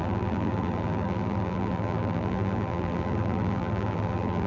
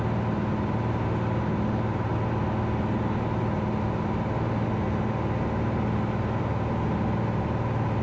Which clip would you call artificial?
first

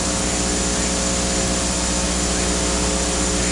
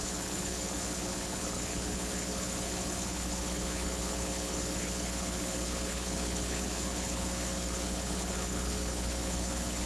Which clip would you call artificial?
second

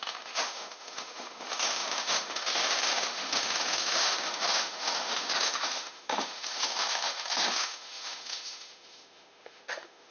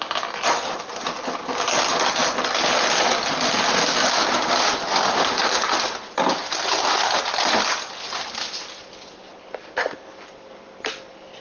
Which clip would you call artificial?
first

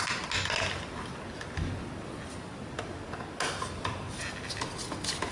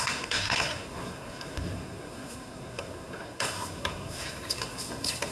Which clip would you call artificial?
second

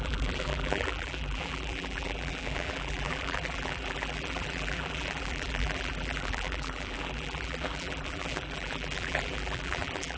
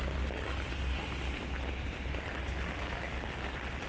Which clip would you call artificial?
first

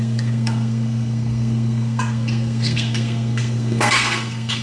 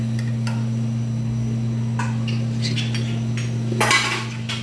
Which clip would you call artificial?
first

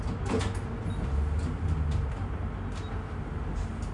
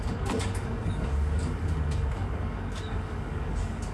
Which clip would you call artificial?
second